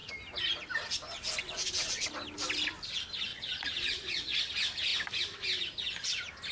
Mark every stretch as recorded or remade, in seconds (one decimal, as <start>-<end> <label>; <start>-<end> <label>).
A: 0.0-3.3 recorded; 3.3-4.4 remade; 4.4-6.5 recorded